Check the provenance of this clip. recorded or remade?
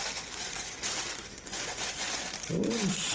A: remade